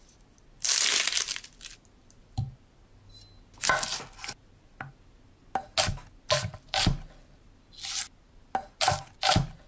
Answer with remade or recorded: recorded